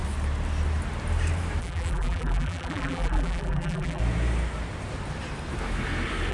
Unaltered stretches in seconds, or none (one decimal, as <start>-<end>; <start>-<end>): 0.0-1.6; 4.0-6.3